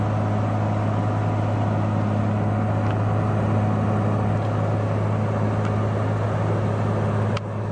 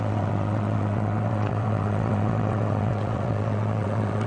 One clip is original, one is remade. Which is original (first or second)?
first